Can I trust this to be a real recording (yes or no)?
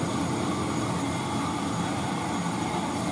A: yes